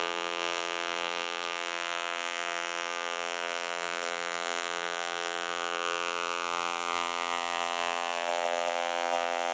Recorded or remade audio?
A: remade